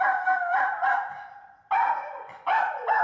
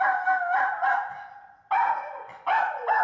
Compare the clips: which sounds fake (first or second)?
first